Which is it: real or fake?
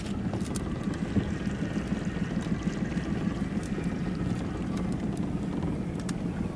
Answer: real